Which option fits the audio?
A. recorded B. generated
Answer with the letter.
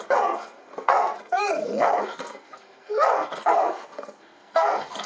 B